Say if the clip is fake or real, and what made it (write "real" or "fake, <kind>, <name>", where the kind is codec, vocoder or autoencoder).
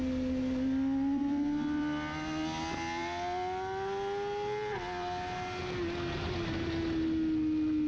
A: real